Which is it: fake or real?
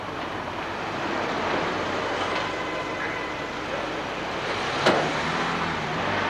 real